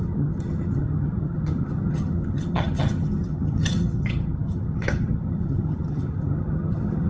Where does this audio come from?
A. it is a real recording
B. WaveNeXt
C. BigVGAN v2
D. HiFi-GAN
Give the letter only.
D